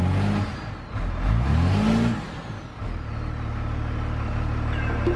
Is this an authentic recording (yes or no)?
yes